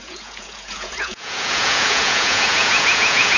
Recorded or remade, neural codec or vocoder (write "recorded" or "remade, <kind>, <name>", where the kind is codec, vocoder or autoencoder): remade, vocoder, Vocos